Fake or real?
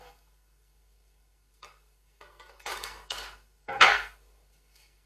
fake